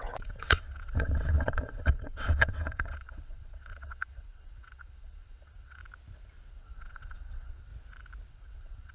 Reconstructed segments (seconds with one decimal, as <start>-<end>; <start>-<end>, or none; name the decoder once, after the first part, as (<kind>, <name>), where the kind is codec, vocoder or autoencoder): 0.0-5.8 (vocoder, WaveNeXt); 6.5-7.7; 8.3-8.9